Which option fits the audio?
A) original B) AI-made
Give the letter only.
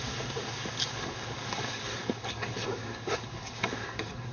B